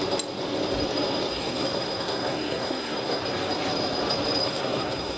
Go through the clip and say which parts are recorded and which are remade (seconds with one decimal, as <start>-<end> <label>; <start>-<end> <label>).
0.0-1.3 recorded; 1.3-3.2 remade; 3.2-4.4 recorded; 4.4-5.2 remade